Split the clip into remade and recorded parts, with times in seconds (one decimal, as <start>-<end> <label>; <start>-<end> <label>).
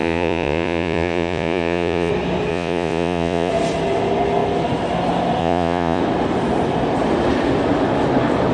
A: 0.0-2.1 remade; 2.1-2.5 recorded; 2.5-3.5 remade; 3.5-5.4 recorded; 5.4-6.0 remade; 6.0-8.5 recorded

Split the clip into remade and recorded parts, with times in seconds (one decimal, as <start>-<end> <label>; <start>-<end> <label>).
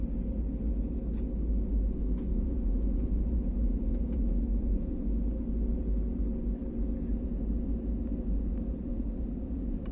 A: 0.0-2.3 recorded; 2.3-5.2 remade; 5.2-8.9 recorded; 8.9-9.9 remade